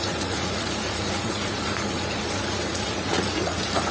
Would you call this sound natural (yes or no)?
no